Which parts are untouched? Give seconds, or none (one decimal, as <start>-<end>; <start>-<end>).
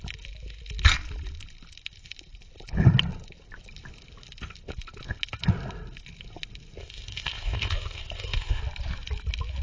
0.0-6.8; 8.6-9.6